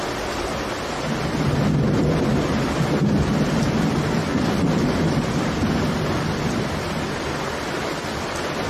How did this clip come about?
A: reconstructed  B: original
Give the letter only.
B